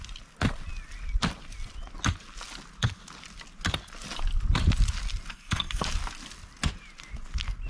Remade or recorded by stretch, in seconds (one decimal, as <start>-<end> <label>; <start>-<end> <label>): 0.0-5.3 recorded; 5.3-5.8 remade; 5.8-7.7 recorded